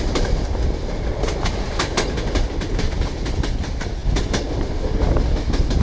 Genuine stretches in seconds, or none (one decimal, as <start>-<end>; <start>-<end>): 0.0-5.8